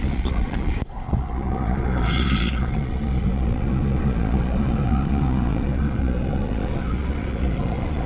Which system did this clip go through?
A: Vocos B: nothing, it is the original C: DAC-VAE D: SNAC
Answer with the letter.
A